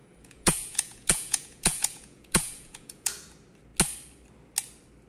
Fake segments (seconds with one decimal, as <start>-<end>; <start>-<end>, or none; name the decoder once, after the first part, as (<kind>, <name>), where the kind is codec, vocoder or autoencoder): 0.0-3.1 (vocoder, Vocos)